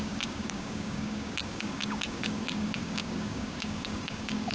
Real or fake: fake